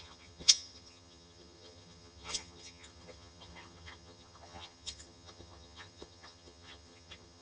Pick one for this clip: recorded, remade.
remade